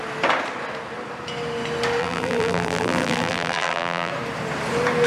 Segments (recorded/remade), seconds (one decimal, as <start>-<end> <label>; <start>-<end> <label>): 0.0-2.0 recorded; 2.0-4.1 remade; 4.1-5.1 recorded